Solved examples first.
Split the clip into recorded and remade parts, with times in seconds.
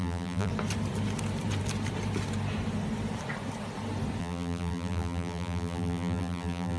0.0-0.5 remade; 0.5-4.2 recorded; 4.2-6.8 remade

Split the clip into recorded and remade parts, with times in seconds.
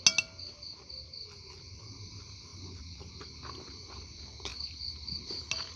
0.0-2.5 recorded; 2.5-3.2 remade; 3.2-5.8 recorded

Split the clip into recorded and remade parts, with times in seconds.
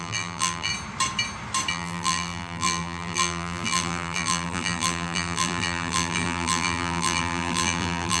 0.0-0.7 remade; 0.7-1.7 recorded; 1.7-8.2 remade